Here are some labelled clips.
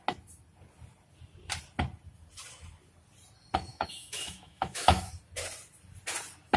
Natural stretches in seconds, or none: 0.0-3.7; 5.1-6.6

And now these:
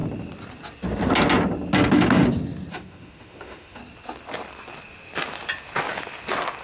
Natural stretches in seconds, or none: 0.0-2.7; 3.8-6.6

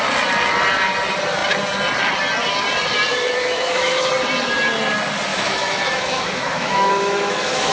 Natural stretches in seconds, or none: 0.0-3.1; 4.1-5.3

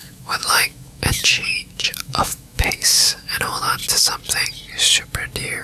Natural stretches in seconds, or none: 3.8-5.6

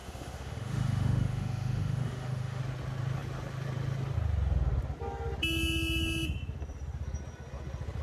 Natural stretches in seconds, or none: 2.6-8.0

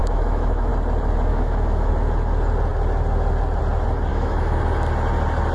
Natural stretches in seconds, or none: 0.7-1.3; 1.9-4.1; 4.6-5.5

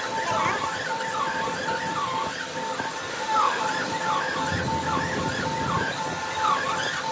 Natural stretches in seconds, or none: 0.0-3.1; 3.6-7.1